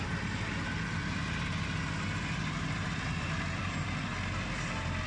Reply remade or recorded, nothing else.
recorded